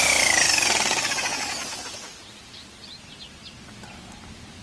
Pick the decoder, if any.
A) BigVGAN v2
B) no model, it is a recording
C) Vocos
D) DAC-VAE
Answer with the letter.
B